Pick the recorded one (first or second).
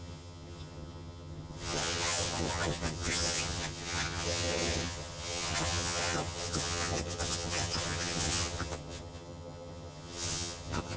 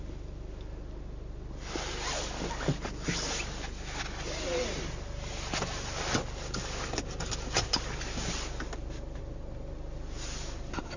second